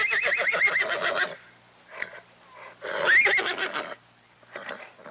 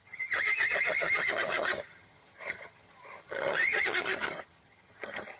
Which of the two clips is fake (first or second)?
second